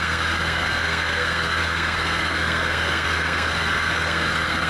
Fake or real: fake